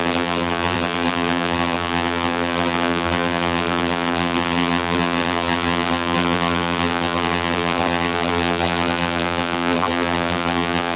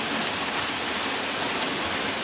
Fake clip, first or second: first